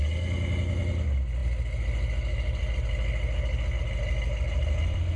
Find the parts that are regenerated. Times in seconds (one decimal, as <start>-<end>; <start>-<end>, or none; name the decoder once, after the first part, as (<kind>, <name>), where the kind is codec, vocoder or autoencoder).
none